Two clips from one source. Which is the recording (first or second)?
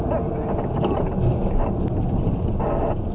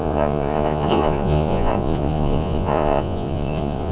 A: first